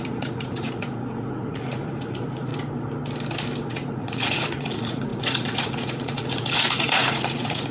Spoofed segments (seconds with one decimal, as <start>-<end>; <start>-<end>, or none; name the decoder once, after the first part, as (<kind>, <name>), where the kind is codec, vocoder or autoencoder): 0.0-2.5 (vocoder, Vocos); 3.7-7.7